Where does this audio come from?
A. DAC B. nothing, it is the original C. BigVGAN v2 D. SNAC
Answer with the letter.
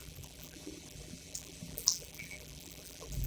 C